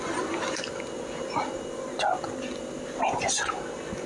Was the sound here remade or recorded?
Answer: recorded